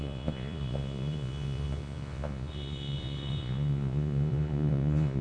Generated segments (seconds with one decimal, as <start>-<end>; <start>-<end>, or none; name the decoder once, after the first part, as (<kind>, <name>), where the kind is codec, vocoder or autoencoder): 0.0-5.2 (vocoder, Vocos)